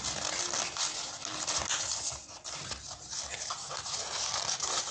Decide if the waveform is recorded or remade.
recorded